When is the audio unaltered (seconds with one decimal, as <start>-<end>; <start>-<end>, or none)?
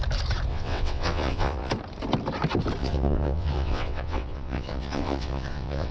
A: 0.0-0.5; 1.7-2.8